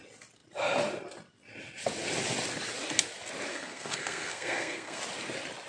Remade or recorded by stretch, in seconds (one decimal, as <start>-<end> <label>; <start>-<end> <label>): 0.0-3.5 recorded; 3.5-5.0 remade; 5.0-5.7 recorded